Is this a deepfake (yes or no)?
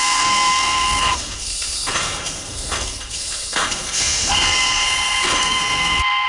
yes